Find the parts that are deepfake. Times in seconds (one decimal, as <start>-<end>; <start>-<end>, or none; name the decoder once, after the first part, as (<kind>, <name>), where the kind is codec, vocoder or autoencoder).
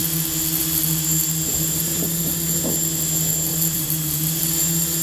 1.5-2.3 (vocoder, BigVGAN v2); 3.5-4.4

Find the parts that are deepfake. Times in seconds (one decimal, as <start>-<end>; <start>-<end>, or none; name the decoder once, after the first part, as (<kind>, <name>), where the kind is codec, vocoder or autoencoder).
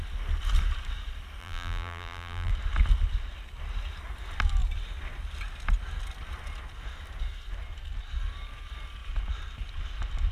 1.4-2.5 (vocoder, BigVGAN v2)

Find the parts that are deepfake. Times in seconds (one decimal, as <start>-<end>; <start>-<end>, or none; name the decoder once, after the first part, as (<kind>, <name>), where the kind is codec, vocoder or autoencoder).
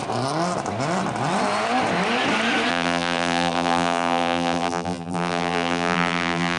2.7-6.6 (vocoder, BigVGAN v2)